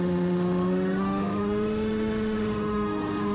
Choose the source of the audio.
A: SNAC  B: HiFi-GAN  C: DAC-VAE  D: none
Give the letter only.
C